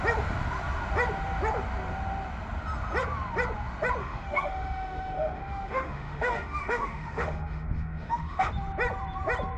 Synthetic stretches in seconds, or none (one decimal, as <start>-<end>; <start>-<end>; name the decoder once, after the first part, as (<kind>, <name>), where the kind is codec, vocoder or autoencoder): 4.0-8.5 (autoencoder, DAC-VAE)